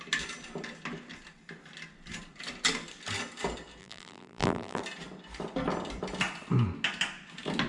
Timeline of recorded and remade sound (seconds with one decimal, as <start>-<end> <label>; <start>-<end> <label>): 0.0-3.8 recorded; 3.8-4.8 remade; 4.8-7.7 recorded